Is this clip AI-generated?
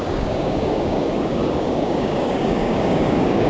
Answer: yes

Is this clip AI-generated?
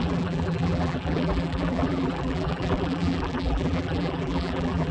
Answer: yes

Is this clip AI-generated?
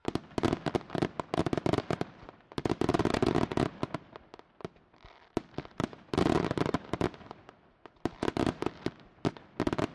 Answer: no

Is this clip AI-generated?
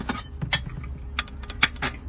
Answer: no